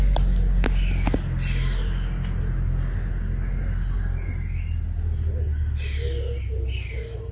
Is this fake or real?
real